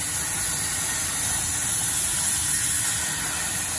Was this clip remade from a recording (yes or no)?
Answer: no